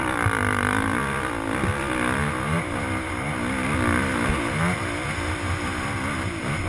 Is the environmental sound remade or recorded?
recorded